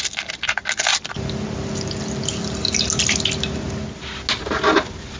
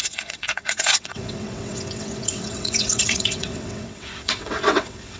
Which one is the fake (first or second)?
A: second